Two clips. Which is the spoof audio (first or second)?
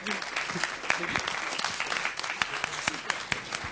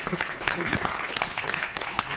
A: second